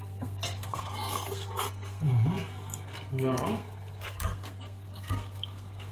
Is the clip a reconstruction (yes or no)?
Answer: yes